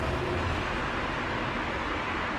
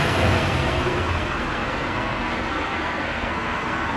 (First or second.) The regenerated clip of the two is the second